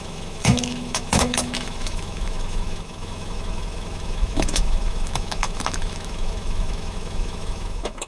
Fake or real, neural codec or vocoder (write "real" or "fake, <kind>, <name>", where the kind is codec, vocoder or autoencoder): fake, autoencoder, DAC-VAE